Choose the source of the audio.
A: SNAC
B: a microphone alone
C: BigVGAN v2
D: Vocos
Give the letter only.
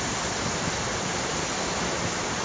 B